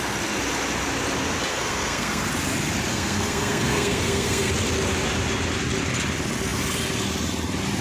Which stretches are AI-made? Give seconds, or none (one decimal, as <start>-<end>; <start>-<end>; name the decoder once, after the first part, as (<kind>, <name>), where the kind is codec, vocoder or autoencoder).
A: 1.5-2.2 (codec, SNAC); 2.9-4.5